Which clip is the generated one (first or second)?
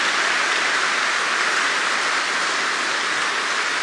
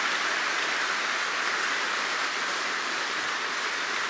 second